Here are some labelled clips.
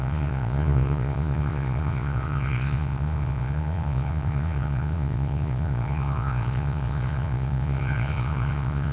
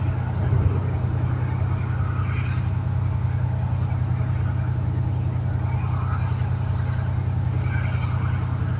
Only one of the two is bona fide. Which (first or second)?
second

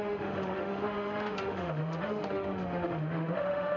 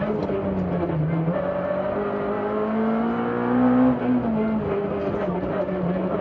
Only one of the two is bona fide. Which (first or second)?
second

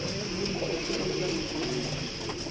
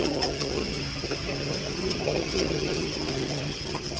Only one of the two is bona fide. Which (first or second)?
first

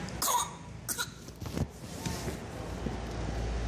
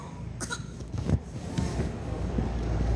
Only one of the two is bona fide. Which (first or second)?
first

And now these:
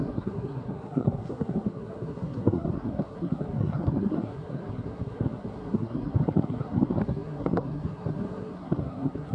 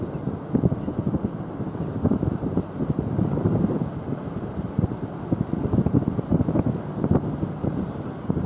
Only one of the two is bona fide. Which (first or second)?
second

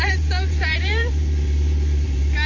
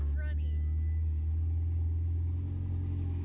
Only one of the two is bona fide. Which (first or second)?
second